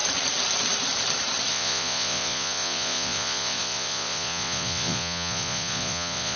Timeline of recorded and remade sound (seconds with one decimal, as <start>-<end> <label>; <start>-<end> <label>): 0.0-1.5 recorded; 1.5-6.4 remade

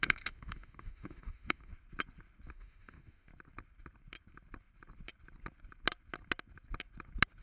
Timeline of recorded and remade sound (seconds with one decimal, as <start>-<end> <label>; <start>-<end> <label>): 0.0-1.7 remade; 1.7-2.5 recorded; 2.5-3.3 remade; 3.3-7.4 recorded

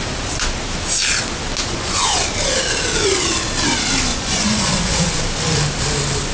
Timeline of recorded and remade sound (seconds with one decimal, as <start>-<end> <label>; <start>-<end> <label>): 0.0-1.7 recorded; 1.7-2.2 remade; 2.2-4.1 recorded; 4.1-5.2 remade; 5.2-6.3 recorded

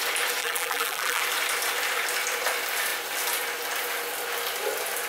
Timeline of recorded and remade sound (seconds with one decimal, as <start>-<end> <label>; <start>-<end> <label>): 0.0-0.4 recorded; 0.4-1.2 remade; 1.2-5.1 recorded

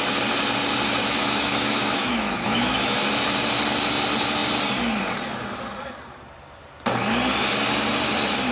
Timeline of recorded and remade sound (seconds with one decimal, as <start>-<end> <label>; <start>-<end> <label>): 0.0-1.0 recorded; 1.0-3.1 remade; 3.1-8.5 recorded

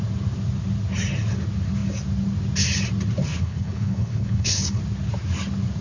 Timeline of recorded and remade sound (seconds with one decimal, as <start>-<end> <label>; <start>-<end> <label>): 0.0-3.2 recorded; 3.2-4.8 remade; 4.8-5.8 recorded

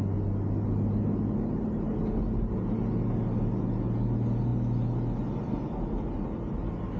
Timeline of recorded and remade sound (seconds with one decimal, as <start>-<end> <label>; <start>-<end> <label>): 0.0-7.0 recorded